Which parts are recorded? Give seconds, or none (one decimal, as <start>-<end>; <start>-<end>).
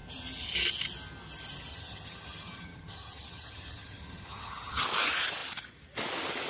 0.0-1.7; 4.8-6.5